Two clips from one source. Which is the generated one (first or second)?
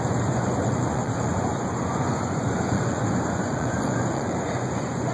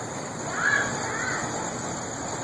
first